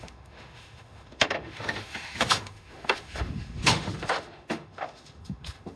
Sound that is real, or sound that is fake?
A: fake